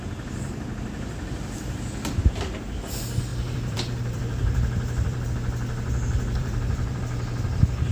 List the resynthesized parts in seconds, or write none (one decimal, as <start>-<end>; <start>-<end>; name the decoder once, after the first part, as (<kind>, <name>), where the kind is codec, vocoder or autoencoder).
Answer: 3.3-5.3 (vocoder, BigVGAN v2); 6.4-7.0